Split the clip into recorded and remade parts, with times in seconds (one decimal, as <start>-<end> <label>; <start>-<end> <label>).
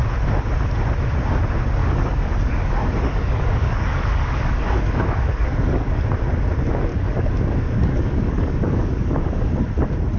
0.0-1.8 recorded; 1.8-6.0 remade; 6.0-6.9 recorded; 6.9-9.5 remade; 9.5-10.2 recorded